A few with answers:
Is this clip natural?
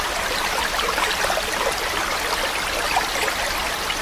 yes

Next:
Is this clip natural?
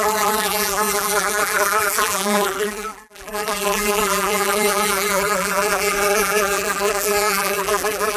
no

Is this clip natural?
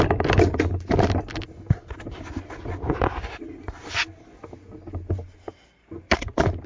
yes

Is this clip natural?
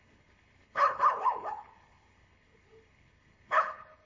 no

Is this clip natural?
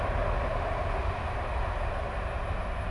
yes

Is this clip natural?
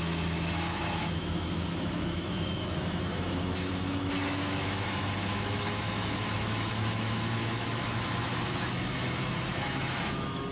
no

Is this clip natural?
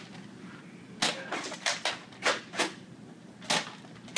yes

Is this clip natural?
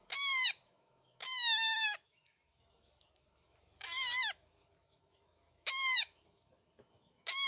no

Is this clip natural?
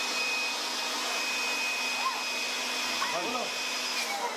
yes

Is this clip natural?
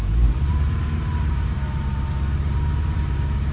no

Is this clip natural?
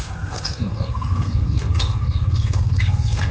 no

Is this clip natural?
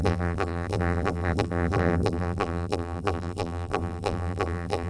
no